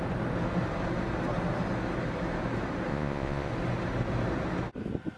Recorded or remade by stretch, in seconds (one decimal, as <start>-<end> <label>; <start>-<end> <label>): 0.0-2.9 recorded; 2.9-3.5 remade; 3.5-5.2 recorded